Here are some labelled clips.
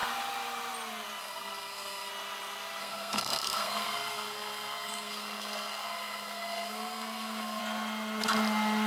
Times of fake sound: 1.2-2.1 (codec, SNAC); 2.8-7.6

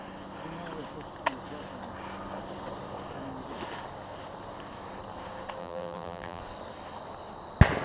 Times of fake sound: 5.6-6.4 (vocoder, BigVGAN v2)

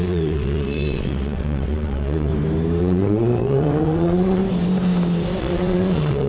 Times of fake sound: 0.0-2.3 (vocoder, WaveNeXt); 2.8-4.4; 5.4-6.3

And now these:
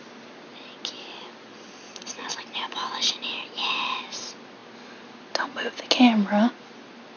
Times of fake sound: none

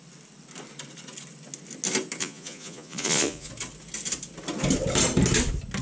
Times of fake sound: 2.2-3.5 (vocoder, Vocos)

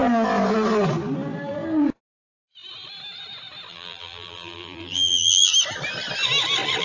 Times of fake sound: 3.7-5.5 (vocoder, BigVGAN v2)